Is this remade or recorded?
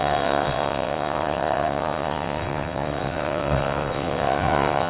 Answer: remade